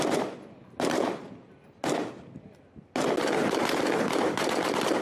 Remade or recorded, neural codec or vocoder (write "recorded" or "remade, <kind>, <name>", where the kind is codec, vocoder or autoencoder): recorded